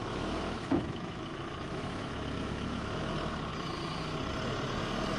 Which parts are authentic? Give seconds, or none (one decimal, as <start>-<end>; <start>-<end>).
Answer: 3.1-5.2